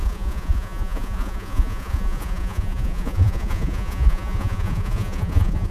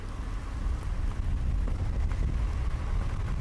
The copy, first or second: first